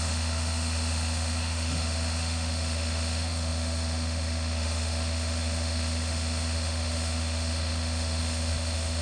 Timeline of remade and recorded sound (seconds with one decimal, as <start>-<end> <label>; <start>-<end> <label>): 0.0-9.0 remade